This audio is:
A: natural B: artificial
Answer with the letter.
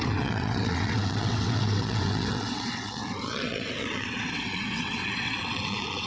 B